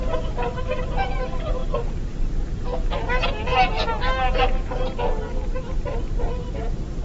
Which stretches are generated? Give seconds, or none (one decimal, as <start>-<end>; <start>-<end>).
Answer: 0.0-1.6; 5.8-7.0